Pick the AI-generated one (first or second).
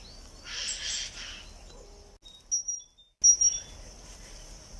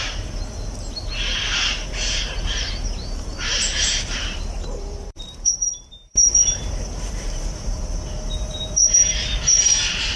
second